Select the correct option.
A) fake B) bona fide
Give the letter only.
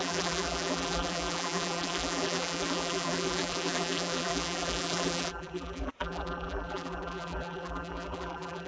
A